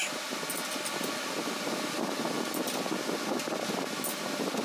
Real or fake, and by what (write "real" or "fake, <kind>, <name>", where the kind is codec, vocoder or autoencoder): real